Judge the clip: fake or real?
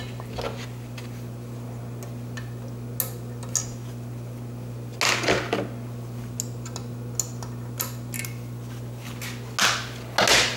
real